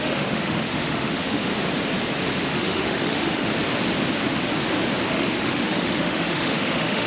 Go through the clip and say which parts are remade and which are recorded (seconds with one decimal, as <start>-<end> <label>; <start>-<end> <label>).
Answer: 0.0-1.5 remade; 1.5-2.2 recorded; 2.2-3.5 remade; 3.5-5.1 recorded; 5.1-7.1 remade